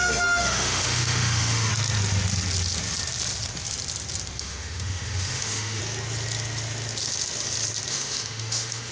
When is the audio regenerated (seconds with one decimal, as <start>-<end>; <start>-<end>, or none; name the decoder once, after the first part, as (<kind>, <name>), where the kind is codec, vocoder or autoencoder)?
0.0-1.7 (autoencoder, DAC-VAE); 4.4-5.8; 7.9-8.9